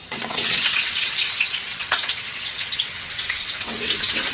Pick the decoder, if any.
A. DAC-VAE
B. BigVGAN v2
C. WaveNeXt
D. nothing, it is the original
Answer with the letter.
C